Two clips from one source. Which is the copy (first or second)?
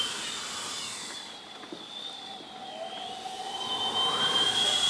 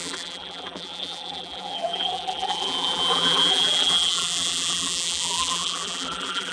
second